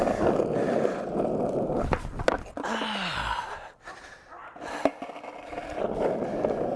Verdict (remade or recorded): recorded